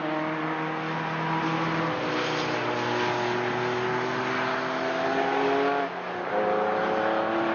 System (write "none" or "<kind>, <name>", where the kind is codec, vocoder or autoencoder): none